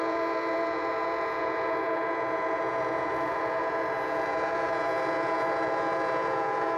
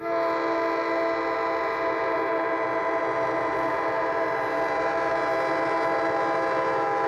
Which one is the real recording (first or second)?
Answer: second